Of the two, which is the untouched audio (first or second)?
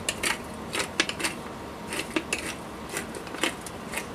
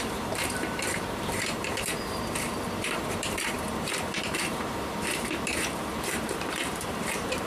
first